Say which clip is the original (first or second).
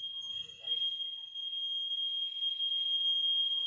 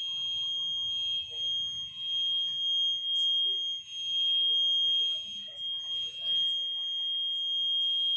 second